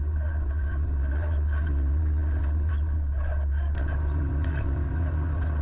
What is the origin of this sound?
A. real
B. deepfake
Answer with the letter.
B